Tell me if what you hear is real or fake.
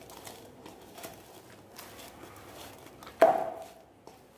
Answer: real